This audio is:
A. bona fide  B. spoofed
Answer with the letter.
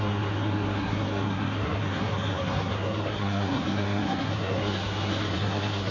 B